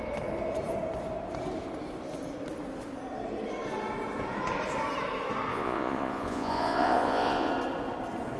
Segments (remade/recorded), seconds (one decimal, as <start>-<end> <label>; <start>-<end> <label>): 0.0-5.5 recorded; 5.5-7.5 remade; 7.5-8.4 recorded